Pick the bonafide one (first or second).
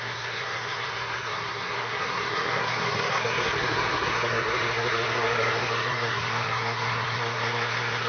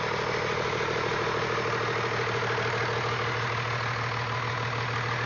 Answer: second